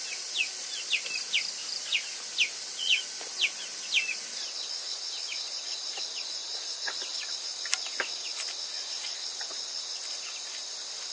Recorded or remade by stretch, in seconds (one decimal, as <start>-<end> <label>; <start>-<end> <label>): 0.0-1.6 recorded; 1.6-2.2 remade; 2.2-6.4 recorded; 6.4-6.9 remade; 6.9-11.1 recorded